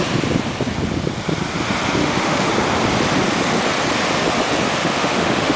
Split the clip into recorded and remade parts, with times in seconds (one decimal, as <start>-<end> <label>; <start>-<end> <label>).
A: 0.0-2.0 recorded; 2.0-2.5 remade; 2.5-4.8 recorded; 4.8-5.6 remade